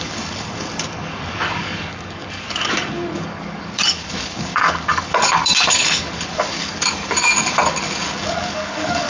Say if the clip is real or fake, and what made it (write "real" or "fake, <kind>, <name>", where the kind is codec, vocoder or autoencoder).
fake, codec, DAC